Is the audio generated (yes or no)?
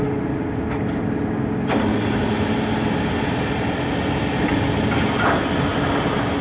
no